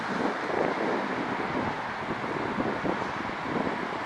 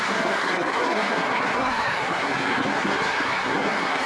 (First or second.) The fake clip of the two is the second